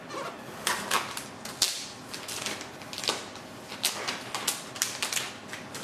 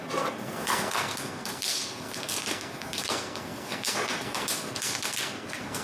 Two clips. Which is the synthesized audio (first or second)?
second